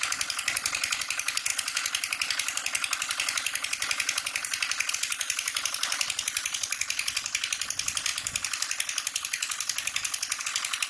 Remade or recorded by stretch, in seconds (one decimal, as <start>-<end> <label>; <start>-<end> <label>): 0.0-10.9 recorded